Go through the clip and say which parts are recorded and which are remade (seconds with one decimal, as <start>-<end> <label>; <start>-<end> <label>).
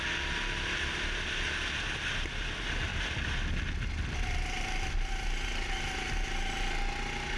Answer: 0.0-7.4 recorded